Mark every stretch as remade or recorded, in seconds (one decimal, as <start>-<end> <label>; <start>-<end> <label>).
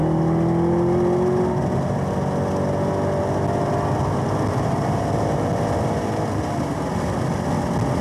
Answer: 0.0-8.0 recorded